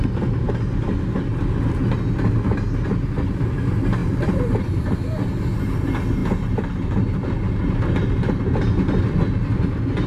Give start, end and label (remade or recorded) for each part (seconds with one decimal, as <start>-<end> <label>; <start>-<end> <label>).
0.0-0.8 recorded; 0.8-1.4 remade; 1.4-10.1 recorded

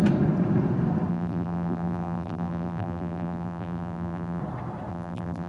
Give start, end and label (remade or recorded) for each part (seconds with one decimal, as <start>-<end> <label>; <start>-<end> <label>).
0.0-1.1 recorded; 1.1-4.4 remade; 4.4-4.9 recorded; 4.9-5.5 remade